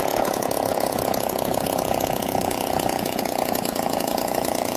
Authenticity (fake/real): fake